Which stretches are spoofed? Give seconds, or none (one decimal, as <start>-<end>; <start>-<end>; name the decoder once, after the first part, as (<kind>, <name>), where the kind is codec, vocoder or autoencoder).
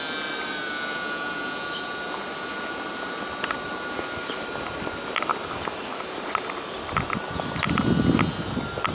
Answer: none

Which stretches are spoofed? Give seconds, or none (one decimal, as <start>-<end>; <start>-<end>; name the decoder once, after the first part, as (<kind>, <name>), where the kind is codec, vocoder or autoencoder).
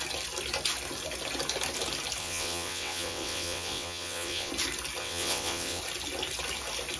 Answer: 2.2-4.5 (vocoder, WaveNeXt); 5.0-5.8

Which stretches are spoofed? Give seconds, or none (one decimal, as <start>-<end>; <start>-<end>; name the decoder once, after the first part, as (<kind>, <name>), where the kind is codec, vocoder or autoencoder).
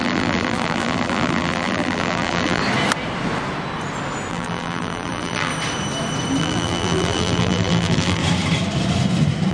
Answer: 0.0-2.6 (vocoder, BigVGAN v2); 4.3-5.5; 6.4-8.2